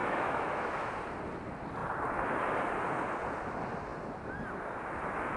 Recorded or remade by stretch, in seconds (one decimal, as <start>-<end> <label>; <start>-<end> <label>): 0.0-0.9 remade; 0.9-5.4 recorded